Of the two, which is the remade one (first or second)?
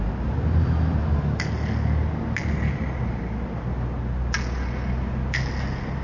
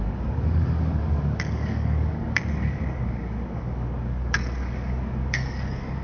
second